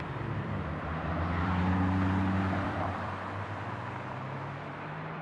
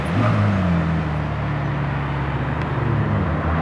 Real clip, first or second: second